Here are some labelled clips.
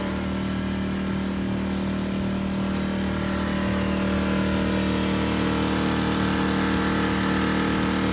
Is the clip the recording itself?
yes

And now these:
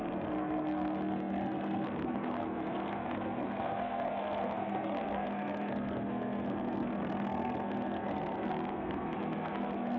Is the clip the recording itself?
no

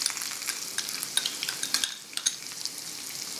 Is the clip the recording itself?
yes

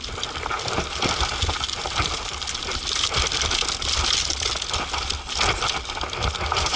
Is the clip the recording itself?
yes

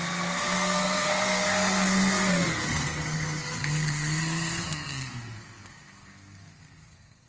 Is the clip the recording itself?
no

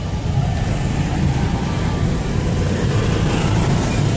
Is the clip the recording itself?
yes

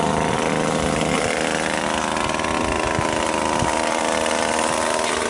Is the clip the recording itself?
yes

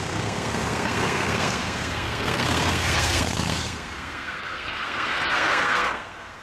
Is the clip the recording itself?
no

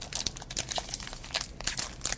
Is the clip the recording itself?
yes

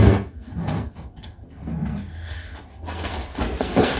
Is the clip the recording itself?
no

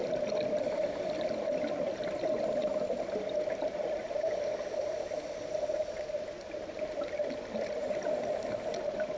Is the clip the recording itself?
yes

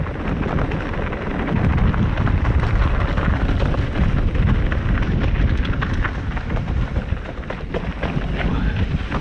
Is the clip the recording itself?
yes